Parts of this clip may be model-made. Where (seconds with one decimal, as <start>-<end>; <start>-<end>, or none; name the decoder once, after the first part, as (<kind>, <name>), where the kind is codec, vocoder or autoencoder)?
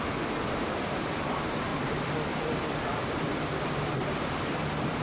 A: 1.7-5.0 (vocoder, BigVGAN v2)